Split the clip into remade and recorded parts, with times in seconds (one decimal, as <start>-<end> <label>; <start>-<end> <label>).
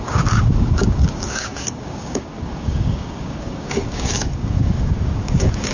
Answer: 0.0-5.7 remade